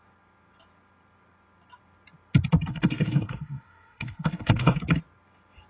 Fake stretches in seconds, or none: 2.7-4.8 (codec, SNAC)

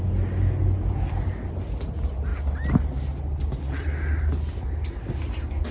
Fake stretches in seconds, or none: none

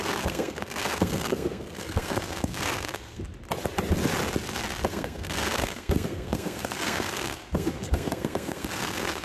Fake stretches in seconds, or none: 0.0-3.2 (codec, SNAC); 4.9-9.2